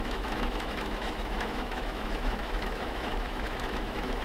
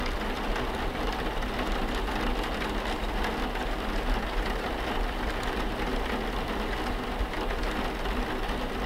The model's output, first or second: first